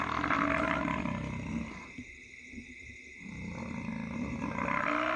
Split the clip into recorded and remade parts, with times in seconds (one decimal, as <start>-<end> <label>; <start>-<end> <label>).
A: 0.0-5.2 recorded